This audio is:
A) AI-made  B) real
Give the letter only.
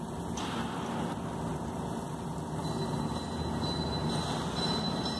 B